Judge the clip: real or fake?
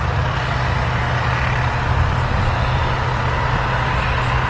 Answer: real